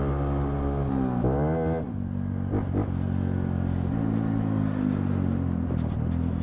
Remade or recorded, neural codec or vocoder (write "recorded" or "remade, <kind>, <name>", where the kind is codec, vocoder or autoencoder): recorded